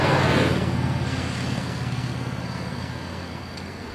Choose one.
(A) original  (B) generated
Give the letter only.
B